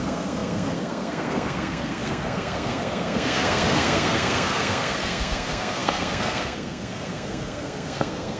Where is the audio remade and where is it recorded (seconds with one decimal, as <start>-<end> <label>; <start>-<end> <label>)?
0.0-8.4 remade